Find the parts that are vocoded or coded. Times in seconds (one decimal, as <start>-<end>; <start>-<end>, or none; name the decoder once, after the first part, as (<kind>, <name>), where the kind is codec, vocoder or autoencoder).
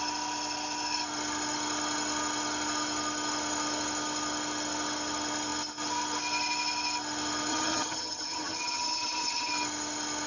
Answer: 7.5-9.5 (vocoder, HiFi-GAN)